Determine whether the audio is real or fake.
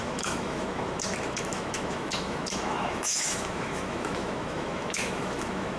fake